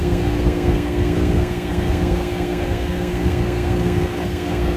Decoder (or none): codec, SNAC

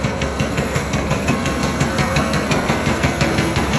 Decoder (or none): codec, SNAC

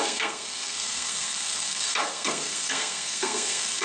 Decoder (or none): codec, SNAC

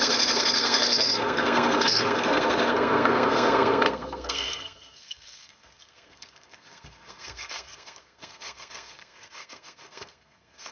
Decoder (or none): codec, SNAC